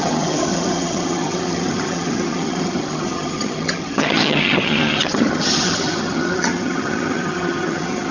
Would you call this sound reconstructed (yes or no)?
yes